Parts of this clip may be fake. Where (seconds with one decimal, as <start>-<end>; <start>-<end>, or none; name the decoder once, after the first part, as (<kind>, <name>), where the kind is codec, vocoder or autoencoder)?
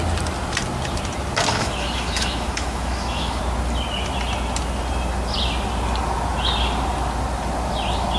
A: 1.5-3.4 (autoencoder, DAC-VAE)